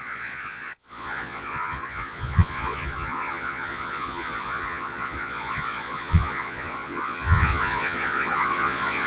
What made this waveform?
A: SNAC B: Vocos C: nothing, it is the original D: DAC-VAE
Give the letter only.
B